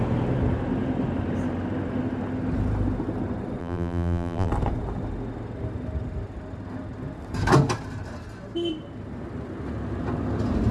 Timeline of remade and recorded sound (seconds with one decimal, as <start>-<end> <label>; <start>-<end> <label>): 0.0-3.6 recorded; 3.6-4.5 remade; 4.5-10.7 recorded